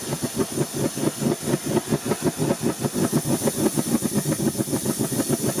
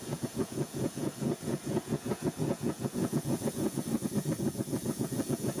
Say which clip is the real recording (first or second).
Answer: first